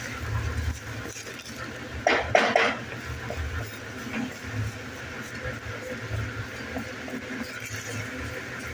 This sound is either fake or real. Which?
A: real